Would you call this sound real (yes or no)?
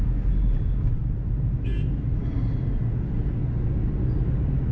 yes